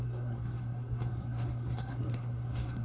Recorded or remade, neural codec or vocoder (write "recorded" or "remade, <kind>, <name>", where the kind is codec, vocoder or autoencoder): remade, codec, SNAC